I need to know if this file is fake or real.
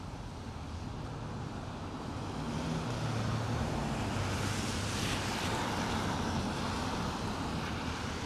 real